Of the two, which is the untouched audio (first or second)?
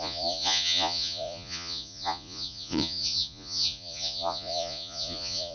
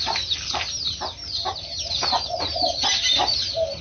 second